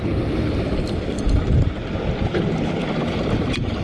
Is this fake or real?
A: fake